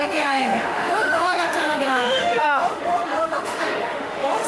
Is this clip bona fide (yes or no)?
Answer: no